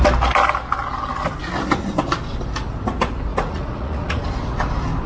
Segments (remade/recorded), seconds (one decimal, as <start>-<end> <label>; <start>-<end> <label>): 0.0-3.3 recorded; 3.3-4.2 remade; 4.2-5.1 recorded